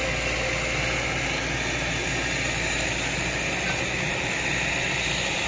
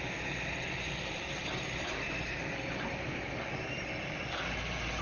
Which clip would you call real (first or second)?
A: first